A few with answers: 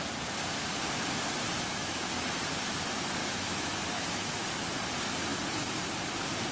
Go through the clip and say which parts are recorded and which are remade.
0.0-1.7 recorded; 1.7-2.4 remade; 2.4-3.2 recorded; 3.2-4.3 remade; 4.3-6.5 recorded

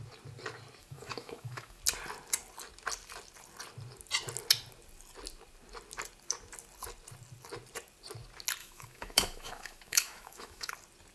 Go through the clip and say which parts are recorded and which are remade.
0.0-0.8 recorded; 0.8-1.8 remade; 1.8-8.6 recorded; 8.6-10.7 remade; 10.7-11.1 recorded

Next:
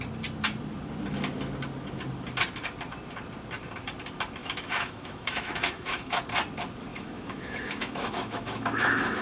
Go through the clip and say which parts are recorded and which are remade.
0.0-4.4 recorded; 4.4-6.2 remade; 6.2-6.9 recorded; 6.9-9.2 remade

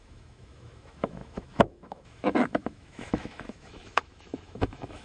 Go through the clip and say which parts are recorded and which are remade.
0.0-5.0 remade